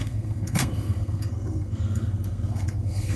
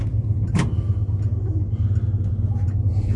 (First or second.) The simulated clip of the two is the first